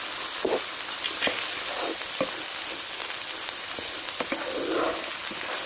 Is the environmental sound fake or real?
real